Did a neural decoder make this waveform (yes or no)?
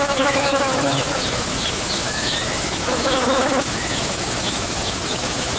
yes